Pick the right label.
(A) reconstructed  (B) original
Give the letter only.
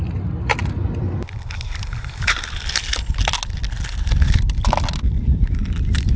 B